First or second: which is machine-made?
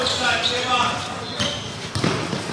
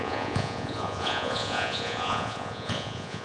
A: second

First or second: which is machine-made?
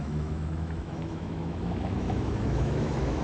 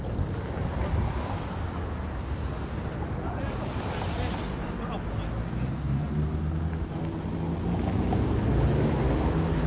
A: first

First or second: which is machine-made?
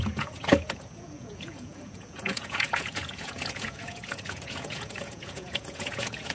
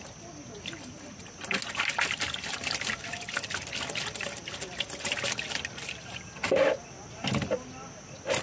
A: first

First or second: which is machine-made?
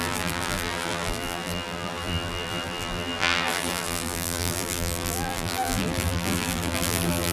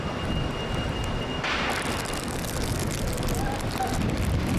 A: first